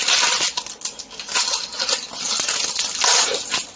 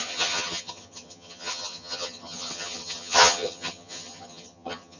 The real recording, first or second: first